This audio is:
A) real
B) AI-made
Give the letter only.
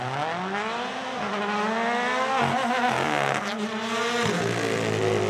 A